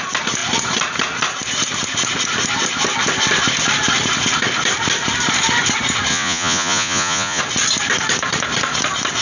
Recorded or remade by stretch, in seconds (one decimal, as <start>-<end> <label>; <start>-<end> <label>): 0.0-6.1 recorded; 6.1-7.4 remade; 7.4-9.2 recorded